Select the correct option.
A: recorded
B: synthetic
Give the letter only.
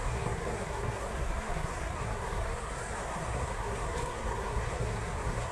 B